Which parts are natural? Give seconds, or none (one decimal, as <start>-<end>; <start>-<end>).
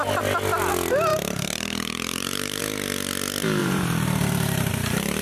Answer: 0.0-1.1; 2.6-3.6; 4.7-5.2